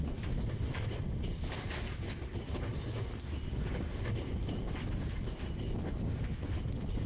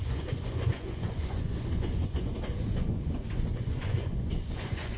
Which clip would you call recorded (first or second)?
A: first